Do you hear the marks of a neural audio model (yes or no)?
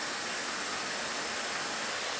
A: no